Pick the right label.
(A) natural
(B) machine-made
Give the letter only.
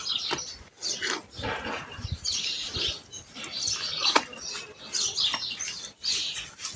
A